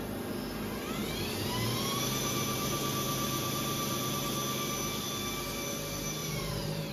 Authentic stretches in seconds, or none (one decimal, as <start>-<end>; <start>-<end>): 0.0-1.0; 4.3-6.2